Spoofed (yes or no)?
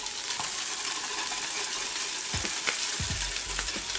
no